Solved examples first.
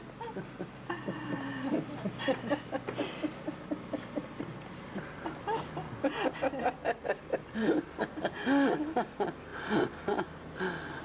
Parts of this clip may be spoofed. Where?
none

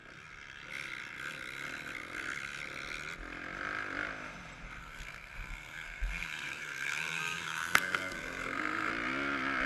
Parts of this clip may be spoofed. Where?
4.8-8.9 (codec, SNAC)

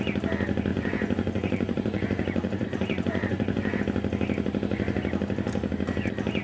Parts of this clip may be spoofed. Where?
0.7-3.8 (vocoder, Vocos)

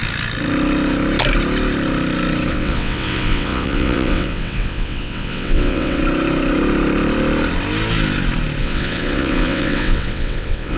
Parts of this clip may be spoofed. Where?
2.5-6.0 (vocoder, WaveNeXt); 8.6-10.8